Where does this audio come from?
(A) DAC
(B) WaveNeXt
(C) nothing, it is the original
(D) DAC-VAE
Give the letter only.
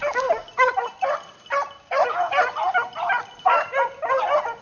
C